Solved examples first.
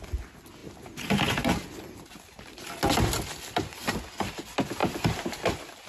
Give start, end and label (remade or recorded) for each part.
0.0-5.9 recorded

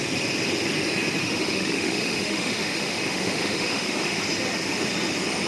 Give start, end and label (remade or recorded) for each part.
0.0-1.2 recorded; 1.2-4.2 remade; 4.2-5.5 recorded

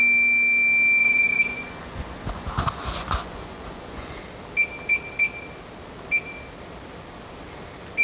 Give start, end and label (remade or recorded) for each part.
0.0-1.0 recorded; 1.0-4.2 remade; 4.2-8.0 recorded